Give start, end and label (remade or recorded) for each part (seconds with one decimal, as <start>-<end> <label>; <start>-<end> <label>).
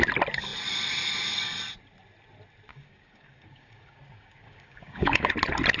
0.0-2.7 recorded; 2.7-5.3 remade; 5.3-5.8 recorded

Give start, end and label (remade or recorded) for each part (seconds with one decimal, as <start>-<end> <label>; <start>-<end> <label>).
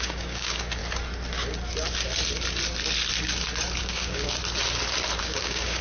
0.0-0.8 remade; 0.8-3.8 recorded; 3.8-4.4 remade; 4.4-5.2 recorded; 5.2-5.8 remade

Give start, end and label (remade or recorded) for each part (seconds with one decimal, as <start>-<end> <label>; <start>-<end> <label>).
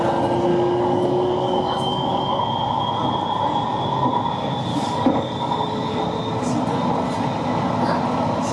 0.0-0.5 recorded; 0.5-2.4 remade; 2.4-4.7 recorded; 4.7-6.0 remade; 6.0-8.5 recorded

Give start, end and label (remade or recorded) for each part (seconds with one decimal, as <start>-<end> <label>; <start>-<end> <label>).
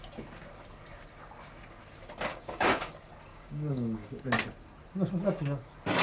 0.0-2.3 recorded; 2.3-2.9 remade; 2.9-3.3 recorded; 3.3-4.2 remade; 4.2-6.0 recorded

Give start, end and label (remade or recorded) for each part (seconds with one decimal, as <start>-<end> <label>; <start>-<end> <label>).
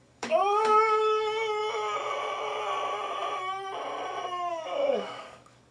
0.0-1.6 remade; 1.6-4.5 recorded; 4.5-5.7 remade